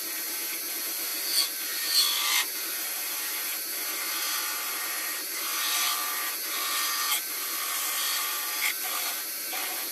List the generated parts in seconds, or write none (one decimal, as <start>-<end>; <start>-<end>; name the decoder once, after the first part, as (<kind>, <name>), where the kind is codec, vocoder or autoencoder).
3.9-5.4 (vocoder, BigVGAN v2)